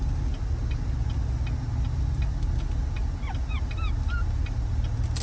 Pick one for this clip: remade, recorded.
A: recorded